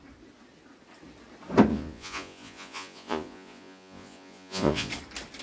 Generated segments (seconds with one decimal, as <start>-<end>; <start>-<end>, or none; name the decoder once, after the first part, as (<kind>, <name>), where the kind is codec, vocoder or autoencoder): 1.7-4.9 (vocoder, Vocos)